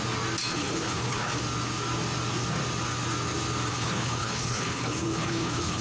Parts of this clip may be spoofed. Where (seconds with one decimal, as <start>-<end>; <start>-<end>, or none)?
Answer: 0.5-1.4; 3.7-5.8